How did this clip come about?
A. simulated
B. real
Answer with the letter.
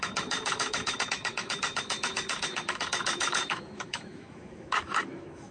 A